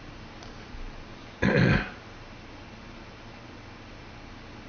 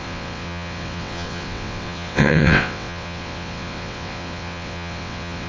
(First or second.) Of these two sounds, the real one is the first